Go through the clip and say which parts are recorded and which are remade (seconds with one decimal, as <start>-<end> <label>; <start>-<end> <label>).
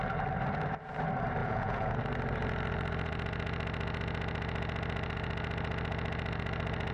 0.0-1.4 recorded; 1.4-1.9 remade; 1.9-6.9 recorded